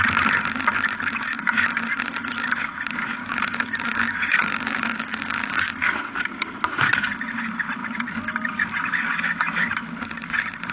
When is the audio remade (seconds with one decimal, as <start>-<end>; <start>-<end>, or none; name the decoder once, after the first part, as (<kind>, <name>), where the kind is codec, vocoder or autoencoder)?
3.2-5.9 (codec, DAC)